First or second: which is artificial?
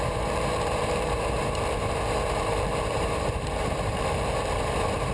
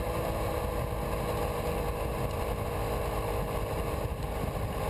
first